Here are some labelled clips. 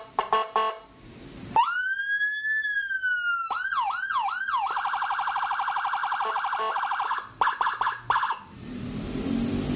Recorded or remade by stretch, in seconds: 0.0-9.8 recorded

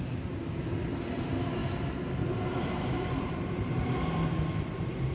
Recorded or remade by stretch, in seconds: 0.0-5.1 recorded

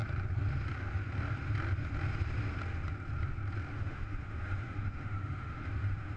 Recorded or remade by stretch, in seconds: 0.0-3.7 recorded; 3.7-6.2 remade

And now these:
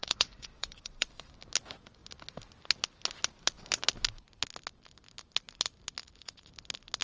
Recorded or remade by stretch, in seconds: 0.0-1.1 remade; 1.1-6.0 recorded; 6.0-6.5 remade; 6.5-7.0 recorded

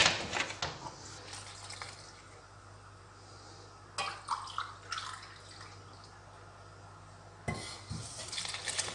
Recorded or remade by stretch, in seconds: 0.0-8.9 recorded